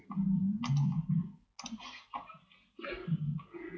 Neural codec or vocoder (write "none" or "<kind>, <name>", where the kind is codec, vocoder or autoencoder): none